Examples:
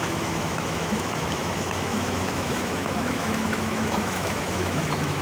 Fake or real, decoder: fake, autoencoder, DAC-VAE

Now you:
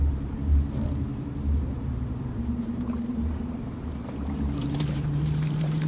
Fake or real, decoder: fake, vocoder, BigVGAN v2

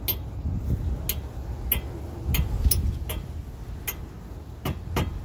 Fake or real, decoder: real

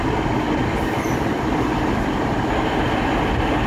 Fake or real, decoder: real